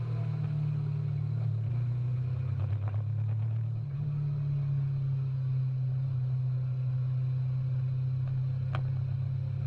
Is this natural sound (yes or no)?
yes